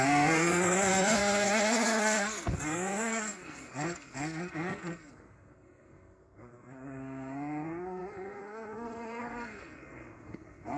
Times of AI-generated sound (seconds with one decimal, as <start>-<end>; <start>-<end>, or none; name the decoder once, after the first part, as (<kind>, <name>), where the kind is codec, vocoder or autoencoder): 0.0-10.8 (codec, SNAC)